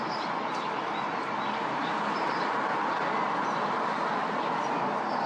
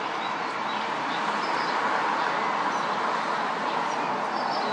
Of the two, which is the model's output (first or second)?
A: first